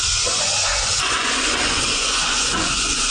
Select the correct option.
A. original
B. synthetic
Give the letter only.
B